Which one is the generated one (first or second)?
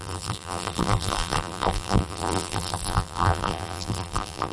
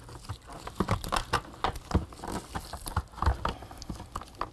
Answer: first